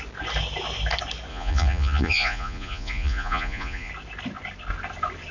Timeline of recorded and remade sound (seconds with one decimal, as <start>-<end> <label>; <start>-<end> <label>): 0.0-1.3 recorded; 1.3-3.9 remade; 3.9-5.3 recorded